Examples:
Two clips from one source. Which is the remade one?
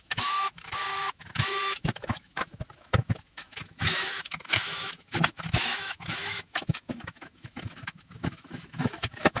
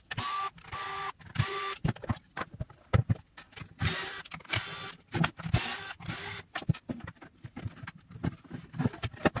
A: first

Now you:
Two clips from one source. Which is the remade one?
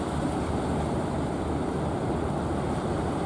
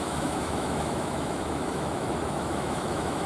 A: second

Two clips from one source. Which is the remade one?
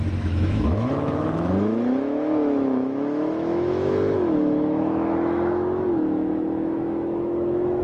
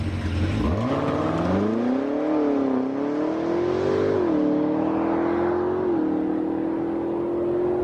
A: first